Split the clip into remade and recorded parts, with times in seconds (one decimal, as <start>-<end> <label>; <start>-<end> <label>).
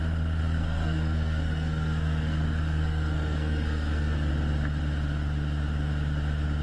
0.0-0.4 recorded; 0.4-4.3 remade; 4.3-6.6 recorded